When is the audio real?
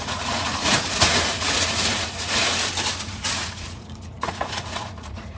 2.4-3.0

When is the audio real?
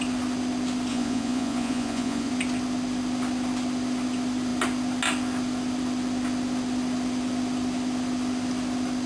0.0-0.9; 2.3-9.1